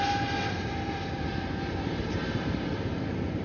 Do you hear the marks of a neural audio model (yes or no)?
yes